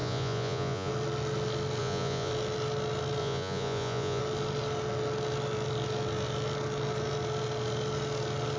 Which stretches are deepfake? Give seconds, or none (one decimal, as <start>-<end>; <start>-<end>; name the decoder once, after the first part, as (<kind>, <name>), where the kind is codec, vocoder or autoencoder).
0.0-0.9 (vocoder, Vocos); 1.8-2.3; 3.2-4.2